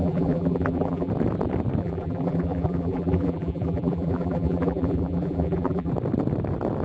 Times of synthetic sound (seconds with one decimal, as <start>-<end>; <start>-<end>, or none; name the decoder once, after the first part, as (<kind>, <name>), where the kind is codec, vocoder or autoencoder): 0.0-1.1 (vocoder, BigVGAN v2); 1.8-5.9